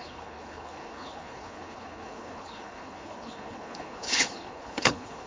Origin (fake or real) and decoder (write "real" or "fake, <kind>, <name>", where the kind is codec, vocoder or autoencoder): fake, codec, HILCodec